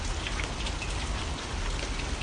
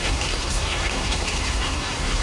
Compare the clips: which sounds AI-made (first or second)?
second